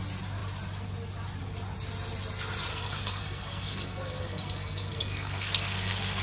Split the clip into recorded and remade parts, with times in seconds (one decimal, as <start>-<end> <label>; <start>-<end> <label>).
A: 0.0-2.7 recorded; 2.7-6.2 remade